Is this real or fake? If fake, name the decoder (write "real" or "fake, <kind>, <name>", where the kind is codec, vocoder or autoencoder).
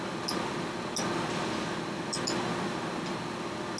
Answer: real